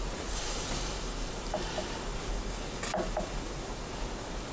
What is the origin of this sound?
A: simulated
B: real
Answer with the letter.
B